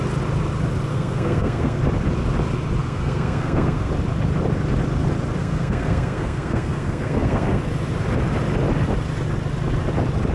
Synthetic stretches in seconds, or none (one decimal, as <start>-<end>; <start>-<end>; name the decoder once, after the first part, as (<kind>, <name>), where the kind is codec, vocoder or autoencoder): 0.9-1.8 (codec, SNAC); 2.8-3.9; 5.4-7.6